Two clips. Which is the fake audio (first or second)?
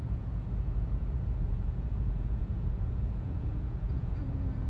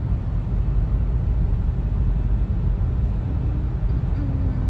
first